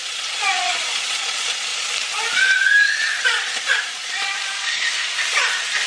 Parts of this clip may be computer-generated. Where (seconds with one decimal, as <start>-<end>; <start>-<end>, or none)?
0.0-1.7; 3.2-4.4